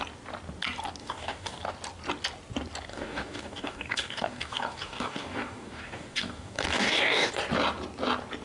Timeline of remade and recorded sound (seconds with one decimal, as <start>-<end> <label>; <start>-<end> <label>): 0.0-1.0 recorded; 1.0-1.6 remade; 1.6-2.9 recorded; 2.9-7.3 remade; 7.3-8.4 recorded